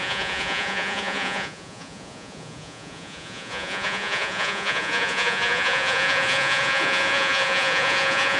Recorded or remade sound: remade